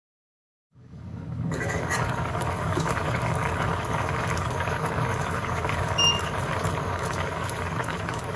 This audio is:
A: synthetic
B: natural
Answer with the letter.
A